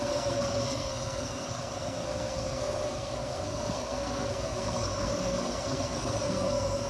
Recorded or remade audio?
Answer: remade